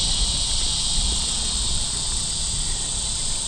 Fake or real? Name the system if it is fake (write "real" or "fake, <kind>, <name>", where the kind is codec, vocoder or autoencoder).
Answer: real